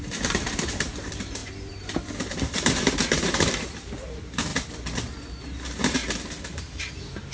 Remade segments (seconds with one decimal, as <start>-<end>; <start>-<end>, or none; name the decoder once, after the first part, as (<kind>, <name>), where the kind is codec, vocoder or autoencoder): 0.0-4.5 (vocoder, BigVGAN v2); 5.1-6.0; 6.6-7.3